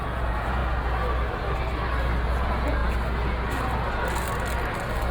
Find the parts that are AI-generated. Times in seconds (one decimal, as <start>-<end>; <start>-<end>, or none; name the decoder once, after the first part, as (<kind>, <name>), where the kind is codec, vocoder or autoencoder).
0.0-0.6 (vocoder, Vocos); 2.3-2.8